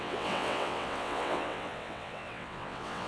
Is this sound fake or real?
fake